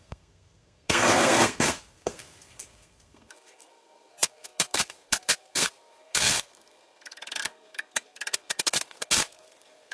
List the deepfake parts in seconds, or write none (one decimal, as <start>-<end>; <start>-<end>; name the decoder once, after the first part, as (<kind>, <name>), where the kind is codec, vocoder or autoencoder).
0.0-9.9 (codec, SNAC)